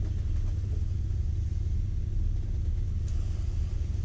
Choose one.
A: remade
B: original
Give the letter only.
B